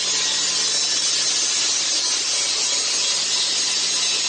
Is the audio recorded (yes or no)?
yes